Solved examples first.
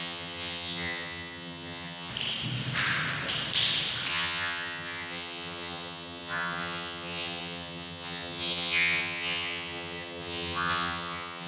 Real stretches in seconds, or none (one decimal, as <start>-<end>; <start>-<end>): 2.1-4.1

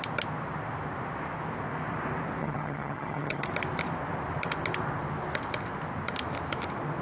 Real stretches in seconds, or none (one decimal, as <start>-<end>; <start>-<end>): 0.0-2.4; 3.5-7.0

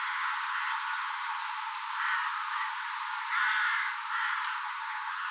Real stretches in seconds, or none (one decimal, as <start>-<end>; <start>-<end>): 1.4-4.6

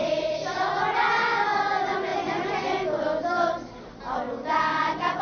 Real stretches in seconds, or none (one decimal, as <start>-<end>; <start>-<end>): 0.0-5.2